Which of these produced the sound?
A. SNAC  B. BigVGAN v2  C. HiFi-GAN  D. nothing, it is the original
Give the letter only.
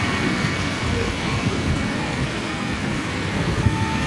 A